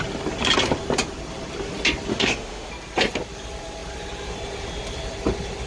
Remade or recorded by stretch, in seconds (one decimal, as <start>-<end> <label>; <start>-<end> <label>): 0.0-2.1 recorded; 2.1-2.7 remade; 2.7-5.7 recorded